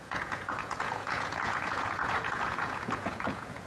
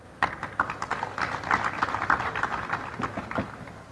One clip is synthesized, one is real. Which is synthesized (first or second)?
first